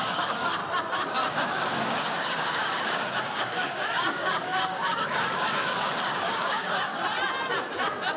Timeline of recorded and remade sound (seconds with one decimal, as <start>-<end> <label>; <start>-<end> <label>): 0.0-0.6 remade; 0.6-1.3 recorded; 1.3-6.9 remade; 6.9-8.2 recorded